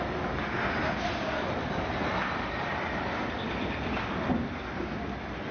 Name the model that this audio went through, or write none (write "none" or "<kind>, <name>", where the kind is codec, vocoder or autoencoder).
none